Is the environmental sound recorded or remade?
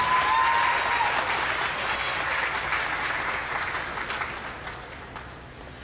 recorded